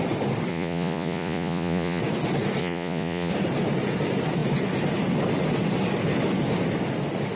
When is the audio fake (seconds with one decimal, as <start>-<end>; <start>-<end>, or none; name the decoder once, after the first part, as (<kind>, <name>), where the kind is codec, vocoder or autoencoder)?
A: 0.5-2.0 (vocoder, Vocos); 2.6-3.3